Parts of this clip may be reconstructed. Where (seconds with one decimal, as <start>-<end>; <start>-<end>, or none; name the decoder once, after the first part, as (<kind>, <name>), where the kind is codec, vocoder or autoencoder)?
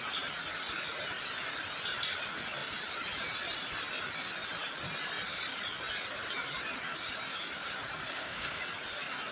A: 8.1-8.6 (codec, SNAC)